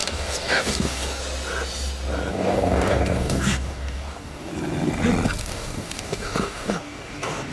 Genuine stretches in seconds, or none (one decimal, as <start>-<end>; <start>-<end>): 1.2-2.3; 4.5-5.4